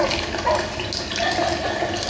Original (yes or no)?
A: yes